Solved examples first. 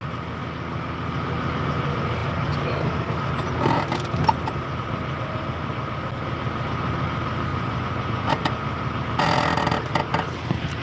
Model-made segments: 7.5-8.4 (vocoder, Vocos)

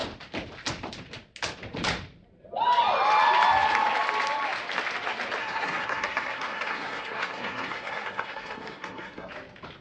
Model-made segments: 5.4-9.3 (codec, SNAC)

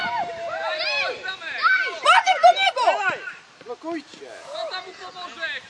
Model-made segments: 0.0-3.4 (vocoder, BigVGAN v2)

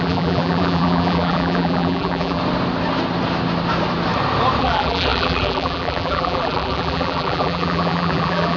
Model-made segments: 0.0-2.4 (vocoder, BigVGAN v2); 4.6-8.6

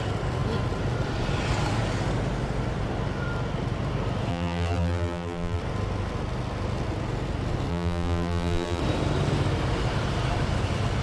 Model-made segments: 4.3-5.6 (vocoder, BigVGAN v2); 7.7-8.8

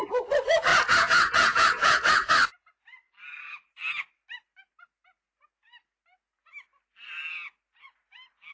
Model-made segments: 0.7-2.3 (vocoder, Vocos)

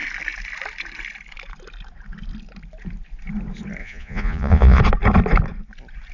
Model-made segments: 3.8-4.8 (vocoder, Vocos)

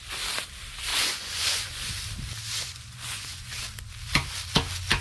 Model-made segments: 0.9-1.9 (vocoder, Vocos); 2.6-3.6